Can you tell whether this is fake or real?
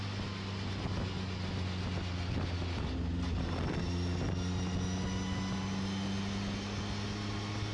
real